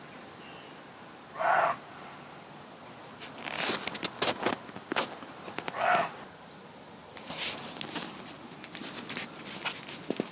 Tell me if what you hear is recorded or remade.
recorded